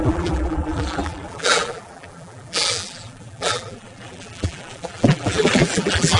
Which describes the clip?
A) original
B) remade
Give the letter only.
B